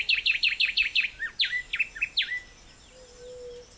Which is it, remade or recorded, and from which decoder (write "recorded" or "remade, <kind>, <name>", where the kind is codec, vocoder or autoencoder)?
recorded